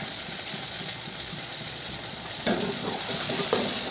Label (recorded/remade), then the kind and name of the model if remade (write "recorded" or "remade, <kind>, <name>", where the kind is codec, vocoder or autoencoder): remade, vocoder, Vocos